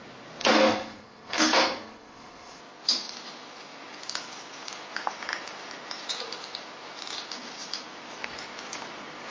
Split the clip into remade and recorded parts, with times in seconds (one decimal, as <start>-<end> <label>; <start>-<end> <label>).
0.0-0.4 recorded; 0.4-2.6 remade; 2.6-9.3 recorded